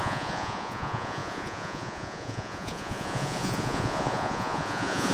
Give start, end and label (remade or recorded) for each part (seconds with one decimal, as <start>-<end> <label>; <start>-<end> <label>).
0.0-5.1 remade